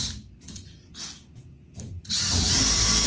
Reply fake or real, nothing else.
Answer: real